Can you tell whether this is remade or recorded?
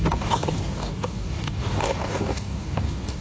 remade